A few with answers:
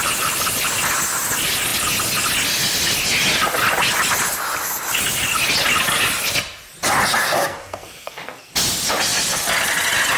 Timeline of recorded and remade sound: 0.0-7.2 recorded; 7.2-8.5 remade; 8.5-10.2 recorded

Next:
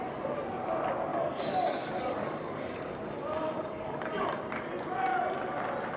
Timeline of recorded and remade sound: 0.0-1.1 recorded; 1.1-4.4 remade; 4.4-6.0 recorded

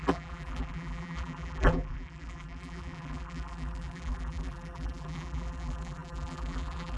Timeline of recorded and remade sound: 0.0-7.0 remade

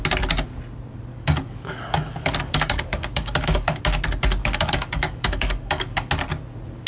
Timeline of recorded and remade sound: 0.0-1.1 recorded; 1.1-3.8 remade; 3.8-4.4 recorded; 4.4-6.1 remade; 6.1-6.9 recorded

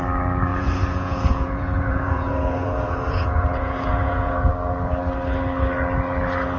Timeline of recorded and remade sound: 0.0-0.5 recorded; 0.5-4.5 remade; 4.5-6.6 recorded